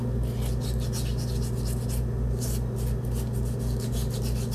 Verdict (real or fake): real